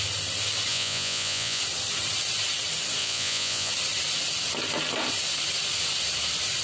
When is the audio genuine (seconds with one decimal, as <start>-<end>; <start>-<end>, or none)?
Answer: 0.0-0.7; 1.6-3.0; 3.7-6.6